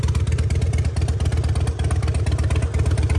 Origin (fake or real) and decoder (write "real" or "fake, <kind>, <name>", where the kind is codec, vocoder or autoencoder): real